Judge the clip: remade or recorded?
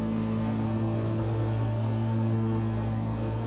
remade